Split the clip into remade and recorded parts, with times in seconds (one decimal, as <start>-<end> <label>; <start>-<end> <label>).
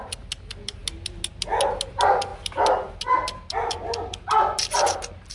0.0-5.3 recorded